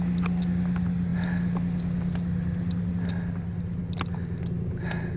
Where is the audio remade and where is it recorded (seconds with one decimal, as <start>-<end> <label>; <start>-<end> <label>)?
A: 0.0-5.2 recorded